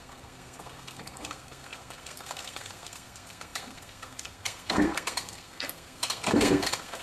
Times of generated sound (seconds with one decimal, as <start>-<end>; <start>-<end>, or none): 0.0-7.0